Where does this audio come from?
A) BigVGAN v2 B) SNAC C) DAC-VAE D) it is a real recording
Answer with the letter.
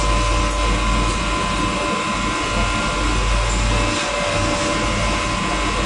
D